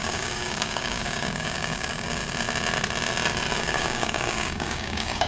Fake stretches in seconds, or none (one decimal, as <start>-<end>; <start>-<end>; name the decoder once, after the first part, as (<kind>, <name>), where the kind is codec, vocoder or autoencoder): 0.0-2.2 (codec, DAC); 3.6-5.3